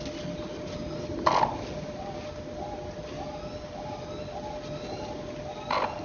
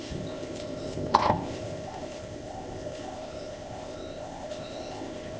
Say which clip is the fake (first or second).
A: second